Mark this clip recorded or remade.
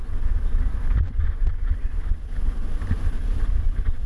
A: recorded